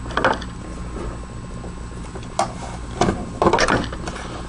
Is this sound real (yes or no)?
yes